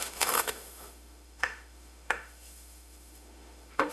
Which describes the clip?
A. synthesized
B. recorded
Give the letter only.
A